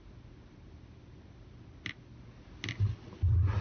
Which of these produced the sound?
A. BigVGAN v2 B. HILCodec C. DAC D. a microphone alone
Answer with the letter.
D